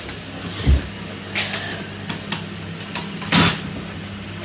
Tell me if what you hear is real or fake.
real